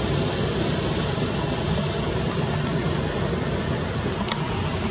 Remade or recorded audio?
recorded